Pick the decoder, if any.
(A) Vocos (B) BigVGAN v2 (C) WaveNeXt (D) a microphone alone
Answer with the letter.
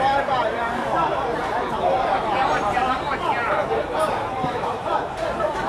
B